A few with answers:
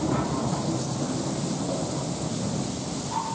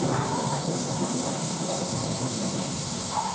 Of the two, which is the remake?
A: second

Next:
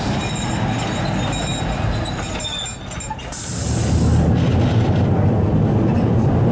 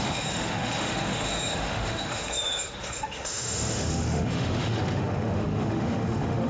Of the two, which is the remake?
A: second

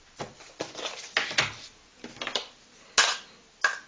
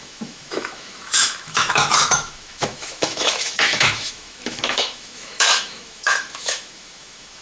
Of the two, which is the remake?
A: second